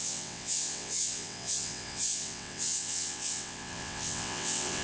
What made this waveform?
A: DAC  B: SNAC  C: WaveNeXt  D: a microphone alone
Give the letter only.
C